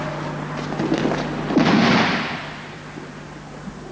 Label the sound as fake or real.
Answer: real